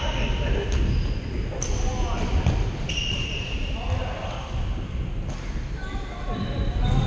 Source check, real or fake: real